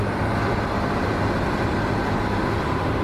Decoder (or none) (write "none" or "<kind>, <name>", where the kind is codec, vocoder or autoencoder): none